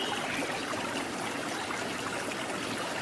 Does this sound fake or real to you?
real